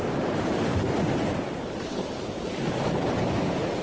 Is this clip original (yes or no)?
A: no